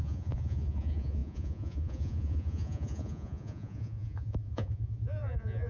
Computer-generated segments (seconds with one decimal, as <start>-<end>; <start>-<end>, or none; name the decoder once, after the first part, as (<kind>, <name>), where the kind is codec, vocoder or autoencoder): 0.0-5.7 (vocoder, Vocos)